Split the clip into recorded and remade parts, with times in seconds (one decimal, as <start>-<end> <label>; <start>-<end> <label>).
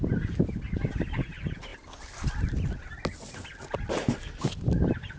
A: 0.0-5.2 recorded